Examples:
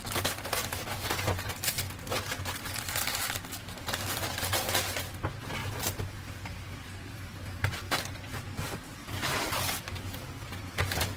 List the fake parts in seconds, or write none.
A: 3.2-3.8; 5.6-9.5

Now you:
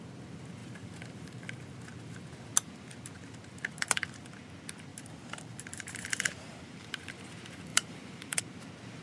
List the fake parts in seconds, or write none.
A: 0.6-1.4; 4.9-7.1; 7.7-8.4

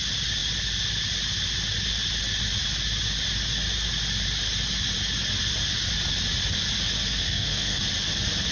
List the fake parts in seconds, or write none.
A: 7.1-7.8

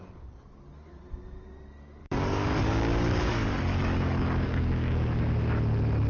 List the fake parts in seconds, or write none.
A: 2.0-5.2

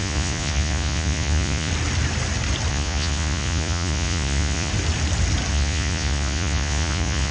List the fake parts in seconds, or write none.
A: 0.0-1.7; 2.7-4.7; 5.5-7.3

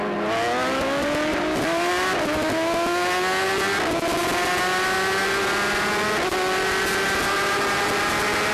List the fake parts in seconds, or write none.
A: 1.3-1.9

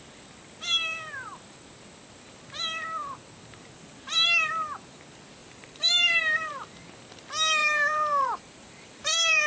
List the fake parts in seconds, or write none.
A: 5.4-6.5; 7.6-9.5